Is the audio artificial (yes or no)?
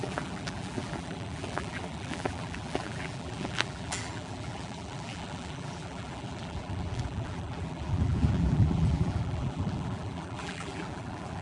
yes